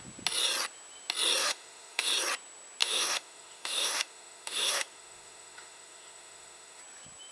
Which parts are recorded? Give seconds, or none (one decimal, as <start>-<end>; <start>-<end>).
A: 0.0-1.4; 2.1-2.8; 6.8-7.3